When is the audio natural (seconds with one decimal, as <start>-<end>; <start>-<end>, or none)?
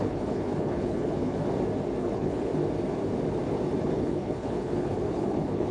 1.4-2.0; 2.5-3.8